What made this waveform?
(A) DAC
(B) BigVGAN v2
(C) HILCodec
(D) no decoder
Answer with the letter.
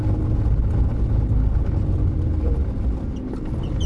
D